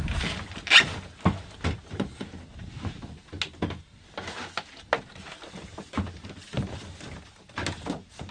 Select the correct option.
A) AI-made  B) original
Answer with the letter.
B